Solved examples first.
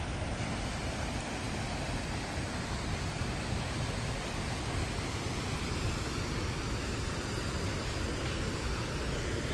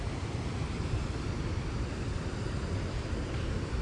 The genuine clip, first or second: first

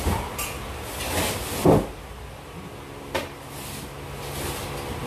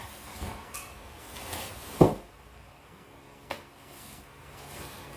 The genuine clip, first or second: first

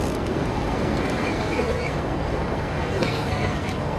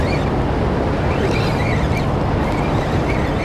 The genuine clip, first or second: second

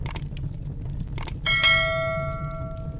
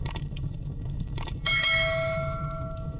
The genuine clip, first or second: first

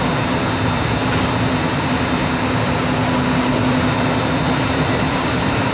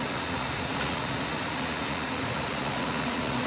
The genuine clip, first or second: first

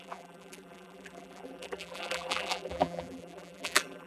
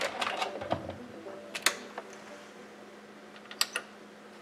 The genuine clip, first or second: second